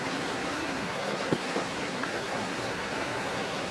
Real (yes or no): no